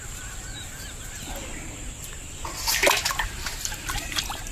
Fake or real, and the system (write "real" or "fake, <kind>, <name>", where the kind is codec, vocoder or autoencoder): real